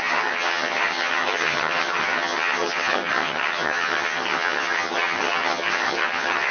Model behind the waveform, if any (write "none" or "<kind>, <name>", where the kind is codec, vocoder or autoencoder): vocoder, HiFi-GAN